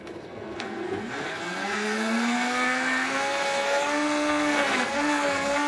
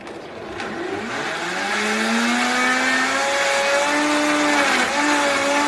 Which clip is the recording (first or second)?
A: second